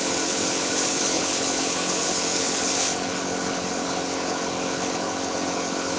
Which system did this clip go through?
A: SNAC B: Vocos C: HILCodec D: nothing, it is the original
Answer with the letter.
C